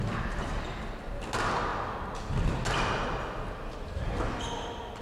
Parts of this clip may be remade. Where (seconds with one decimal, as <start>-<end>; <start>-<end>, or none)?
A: none